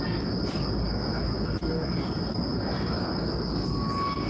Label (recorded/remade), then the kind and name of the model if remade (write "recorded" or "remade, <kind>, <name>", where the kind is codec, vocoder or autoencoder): recorded